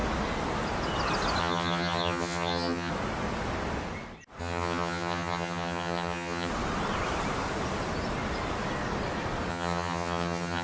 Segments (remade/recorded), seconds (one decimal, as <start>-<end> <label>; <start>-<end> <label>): 0.0-1.4 recorded; 1.4-2.9 remade; 2.9-4.4 recorded; 4.4-6.5 remade; 6.5-9.5 recorded; 9.5-10.6 remade